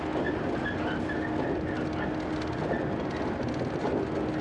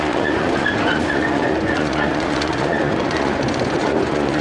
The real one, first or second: first